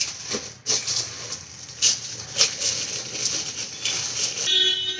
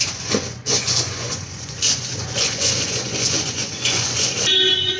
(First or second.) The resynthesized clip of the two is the second